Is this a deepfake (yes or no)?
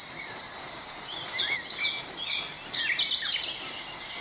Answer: no